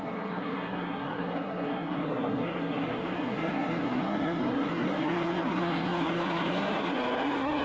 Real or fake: fake